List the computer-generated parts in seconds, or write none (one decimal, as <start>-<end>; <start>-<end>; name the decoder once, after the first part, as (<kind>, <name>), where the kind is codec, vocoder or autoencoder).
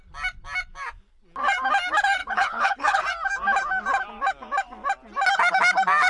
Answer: 2.2-3.0 (codec, HILCodec)